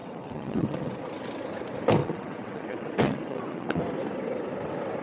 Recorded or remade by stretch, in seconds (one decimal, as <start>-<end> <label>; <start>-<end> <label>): 0.0-0.9 remade; 0.9-2.0 recorded; 2.0-3.8 remade; 3.8-5.0 recorded